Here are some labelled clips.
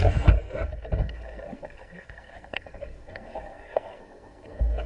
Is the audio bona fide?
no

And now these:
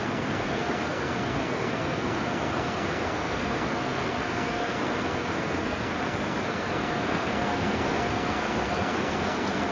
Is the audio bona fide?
no